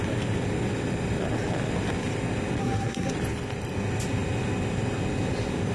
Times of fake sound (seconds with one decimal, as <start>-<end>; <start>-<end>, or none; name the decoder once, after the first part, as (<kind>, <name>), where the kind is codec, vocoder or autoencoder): 2.6-3.1 (codec, SNAC)